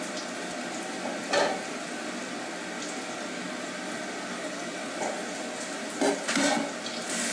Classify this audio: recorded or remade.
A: recorded